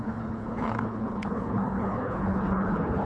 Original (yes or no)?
no